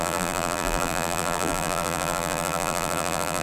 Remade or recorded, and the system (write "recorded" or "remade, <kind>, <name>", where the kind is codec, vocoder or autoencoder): remade, vocoder, BigVGAN v2